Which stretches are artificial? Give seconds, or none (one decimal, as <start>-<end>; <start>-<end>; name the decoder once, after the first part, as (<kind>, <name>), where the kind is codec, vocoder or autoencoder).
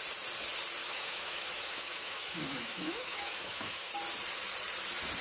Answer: 0.8-3.9 (autoencoder, DAC-VAE)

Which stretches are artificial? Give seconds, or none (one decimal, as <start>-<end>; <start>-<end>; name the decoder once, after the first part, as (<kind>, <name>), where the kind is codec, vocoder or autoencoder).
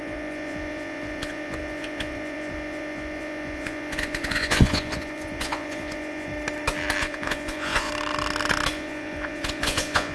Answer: 0.0-6.3 (vocoder, Vocos); 7.0-7.9; 8.7-10.1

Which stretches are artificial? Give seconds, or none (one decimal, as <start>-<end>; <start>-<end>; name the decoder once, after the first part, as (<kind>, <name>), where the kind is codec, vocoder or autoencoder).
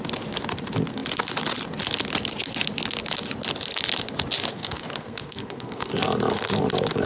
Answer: 4.5-5.9 (codec, SNAC)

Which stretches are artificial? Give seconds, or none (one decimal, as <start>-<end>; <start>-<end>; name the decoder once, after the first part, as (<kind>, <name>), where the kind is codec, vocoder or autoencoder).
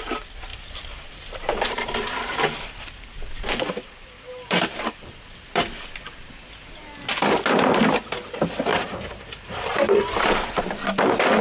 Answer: 0.5-5.6 (vocoder, BigVGAN v2); 8.7-10.6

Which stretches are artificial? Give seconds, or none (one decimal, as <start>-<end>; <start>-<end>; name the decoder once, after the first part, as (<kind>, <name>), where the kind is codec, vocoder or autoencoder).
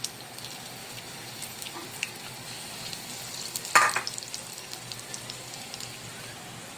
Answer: 0.8-3.6 (vocoder, BigVGAN v2)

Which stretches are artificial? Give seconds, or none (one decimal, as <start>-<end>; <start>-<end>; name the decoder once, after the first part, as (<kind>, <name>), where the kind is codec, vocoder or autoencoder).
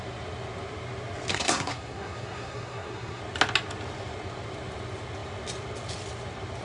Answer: 1.3-3.2 (codec, SNAC)